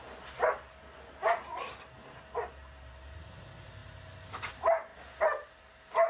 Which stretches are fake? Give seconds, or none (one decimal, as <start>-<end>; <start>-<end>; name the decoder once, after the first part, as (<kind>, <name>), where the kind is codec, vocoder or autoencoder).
none